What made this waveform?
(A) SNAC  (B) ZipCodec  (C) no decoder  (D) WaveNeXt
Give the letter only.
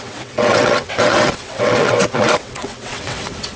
D